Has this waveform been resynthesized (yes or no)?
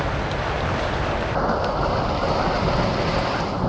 no